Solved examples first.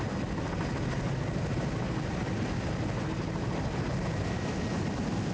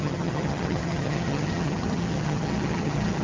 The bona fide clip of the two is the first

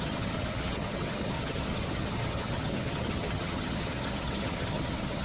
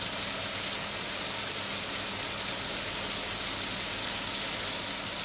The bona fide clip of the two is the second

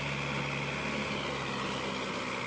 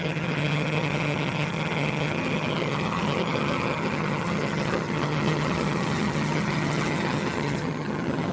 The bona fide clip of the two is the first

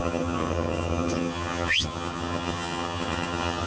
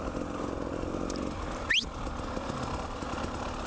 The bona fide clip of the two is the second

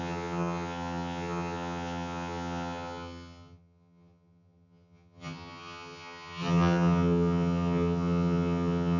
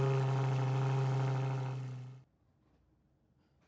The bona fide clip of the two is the second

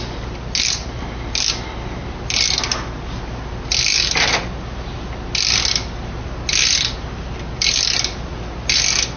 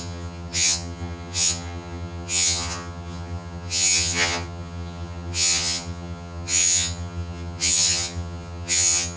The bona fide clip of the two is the first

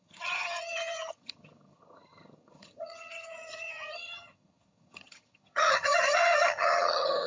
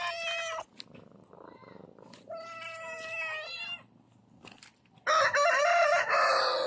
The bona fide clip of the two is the second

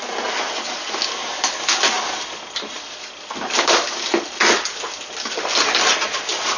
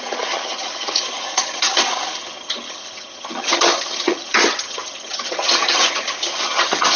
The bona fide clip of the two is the first